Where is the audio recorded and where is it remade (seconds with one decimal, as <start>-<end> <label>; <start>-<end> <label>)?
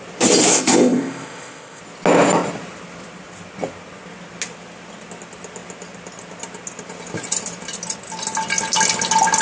0.0-0.5 recorded; 0.5-1.8 remade; 1.8-9.4 recorded